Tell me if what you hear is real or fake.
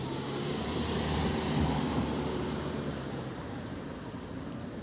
fake